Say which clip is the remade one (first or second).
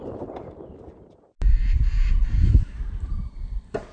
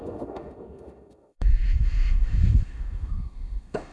second